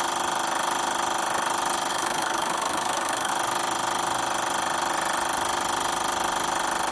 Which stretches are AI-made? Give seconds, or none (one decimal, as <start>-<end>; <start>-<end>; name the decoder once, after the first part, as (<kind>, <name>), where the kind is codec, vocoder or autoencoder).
1.9-3.3 (codec, SNAC)